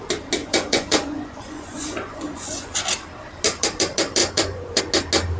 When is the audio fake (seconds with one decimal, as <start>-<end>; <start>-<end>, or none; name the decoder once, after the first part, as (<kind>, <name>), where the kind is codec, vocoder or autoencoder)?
0.4-2.8 (vocoder, Vocos); 4.2-4.8